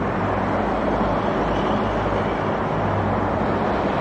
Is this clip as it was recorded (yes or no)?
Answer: yes